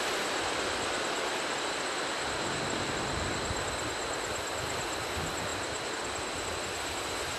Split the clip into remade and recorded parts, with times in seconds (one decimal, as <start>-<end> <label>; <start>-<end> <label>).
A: 0.0-7.4 recorded